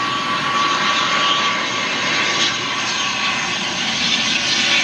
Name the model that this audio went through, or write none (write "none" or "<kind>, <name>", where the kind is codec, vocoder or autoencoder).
none